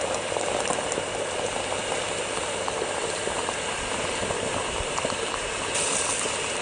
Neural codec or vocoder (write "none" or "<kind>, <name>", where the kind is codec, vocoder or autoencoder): none